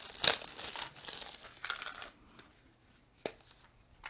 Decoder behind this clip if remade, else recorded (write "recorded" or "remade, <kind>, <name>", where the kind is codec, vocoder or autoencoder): recorded